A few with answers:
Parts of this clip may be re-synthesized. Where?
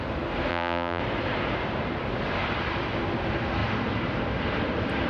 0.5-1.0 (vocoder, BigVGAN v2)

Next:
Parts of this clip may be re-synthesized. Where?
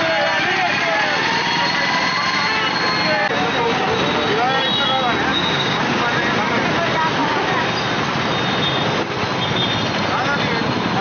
5.3-5.8 (codec, DAC)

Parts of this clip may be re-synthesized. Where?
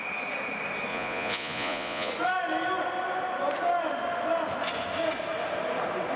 0.9-2.1 (vocoder, Vocos)